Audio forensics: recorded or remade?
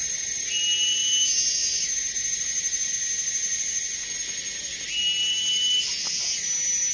recorded